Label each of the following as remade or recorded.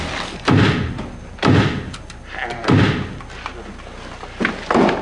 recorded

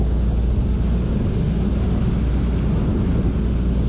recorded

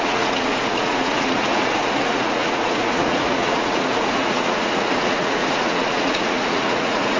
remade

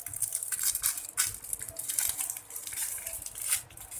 recorded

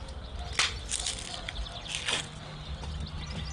recorded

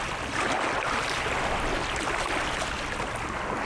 recorded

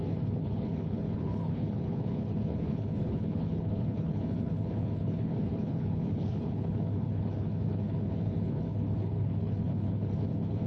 remade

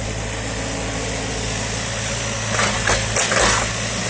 recorded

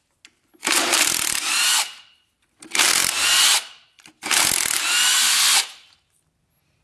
recorded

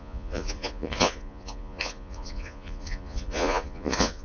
remade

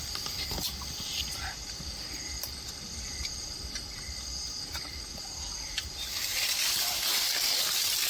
recorded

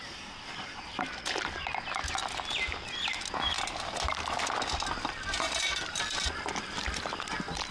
recorded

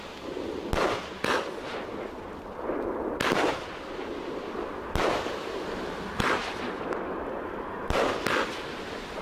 recorded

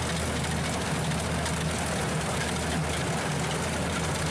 recorded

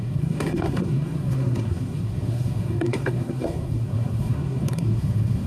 remade